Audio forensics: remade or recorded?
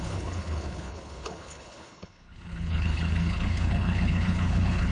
remade